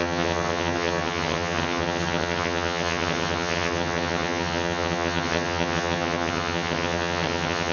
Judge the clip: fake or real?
fake